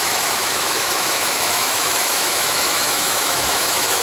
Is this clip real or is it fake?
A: fake